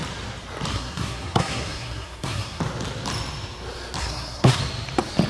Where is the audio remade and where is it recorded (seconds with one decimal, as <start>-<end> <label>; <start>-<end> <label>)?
0.0-0.7 recorded; 0.7-2.6 remade; 2.6-4.0 recorded; 4.0-4.6 remade; 4.6-5.3 recorded